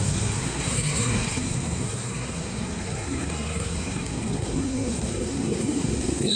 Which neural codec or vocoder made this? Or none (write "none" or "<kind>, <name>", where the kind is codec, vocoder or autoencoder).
codec, SNAC